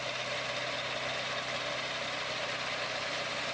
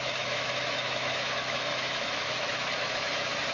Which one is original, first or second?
first